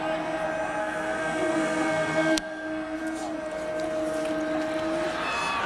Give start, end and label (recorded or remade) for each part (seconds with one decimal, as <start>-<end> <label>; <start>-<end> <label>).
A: 0.0-0.8 recorded; 0.8-3.0 remade; 3.0-5.7 recorded